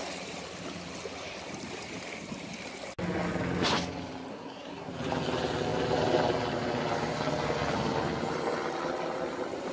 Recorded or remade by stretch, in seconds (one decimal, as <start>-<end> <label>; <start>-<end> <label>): 0.0-4.3 recorded; 4.3-4.9 remade; 4.9-9.7 recorded